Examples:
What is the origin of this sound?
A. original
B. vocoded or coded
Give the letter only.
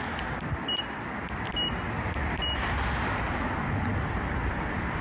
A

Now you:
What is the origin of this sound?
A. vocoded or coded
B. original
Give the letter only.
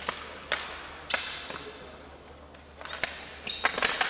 B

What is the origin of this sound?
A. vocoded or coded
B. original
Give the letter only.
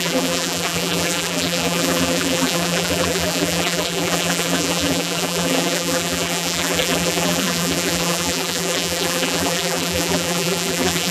A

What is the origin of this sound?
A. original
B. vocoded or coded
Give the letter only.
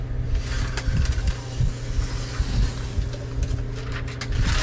A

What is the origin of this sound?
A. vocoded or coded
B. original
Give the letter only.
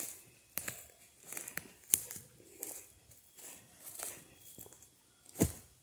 B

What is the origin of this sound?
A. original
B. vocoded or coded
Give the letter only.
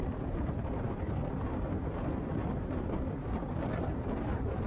B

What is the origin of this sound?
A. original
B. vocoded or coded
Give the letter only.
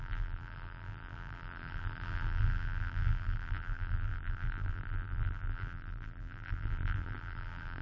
B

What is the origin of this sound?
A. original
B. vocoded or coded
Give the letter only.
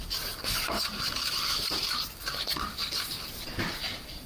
B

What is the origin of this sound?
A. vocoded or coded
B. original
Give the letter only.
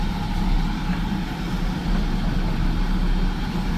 B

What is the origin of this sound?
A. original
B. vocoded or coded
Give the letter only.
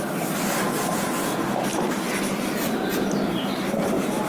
B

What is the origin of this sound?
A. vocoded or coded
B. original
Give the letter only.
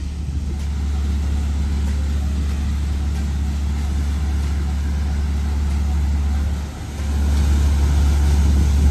B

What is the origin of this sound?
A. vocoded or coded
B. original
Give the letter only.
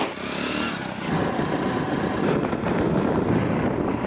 B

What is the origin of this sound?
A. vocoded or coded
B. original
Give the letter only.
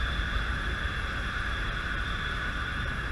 A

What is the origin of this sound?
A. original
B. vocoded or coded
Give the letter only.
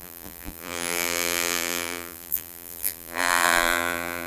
B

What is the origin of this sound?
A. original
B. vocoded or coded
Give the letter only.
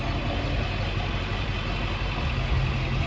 A